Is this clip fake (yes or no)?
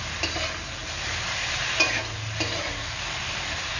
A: no